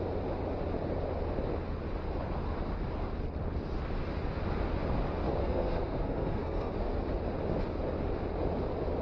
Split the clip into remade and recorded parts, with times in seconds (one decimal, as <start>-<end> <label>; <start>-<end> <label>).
0.0-5.4 recorded; 5.4-6.7 remade; 6.7-9.0 recorded